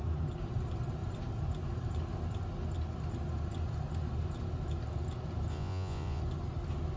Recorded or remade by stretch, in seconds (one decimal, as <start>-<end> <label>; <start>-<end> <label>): 0.0-5.5 recorded; 5.5-6.2 remade; 6.2-7.0 recorded